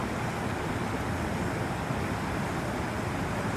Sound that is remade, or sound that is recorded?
recorded